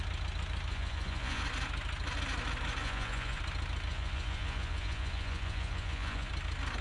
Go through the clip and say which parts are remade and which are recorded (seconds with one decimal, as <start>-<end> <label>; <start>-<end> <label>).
0.0-0.7 recorded; 0.7-1.4 remade; 1.4-2.8 recorded; 2.8-3.4 remade; 3.4-3.9 recorded; 3.9-6.3 remade; 6.3-6.8 recorded